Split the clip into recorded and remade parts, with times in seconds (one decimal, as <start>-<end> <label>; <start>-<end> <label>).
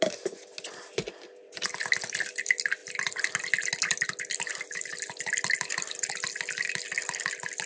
0.0-7.7 recorded